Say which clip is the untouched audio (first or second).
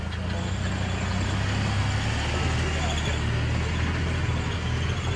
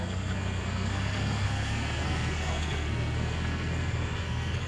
first